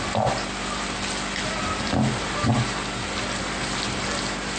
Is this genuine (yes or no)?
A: yes